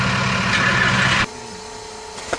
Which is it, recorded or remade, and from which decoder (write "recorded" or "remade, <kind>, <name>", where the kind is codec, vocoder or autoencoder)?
recorded